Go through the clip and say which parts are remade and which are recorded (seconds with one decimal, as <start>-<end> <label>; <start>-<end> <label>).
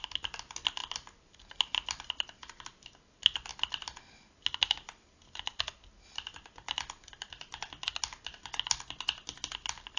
0.0-10.0 recorded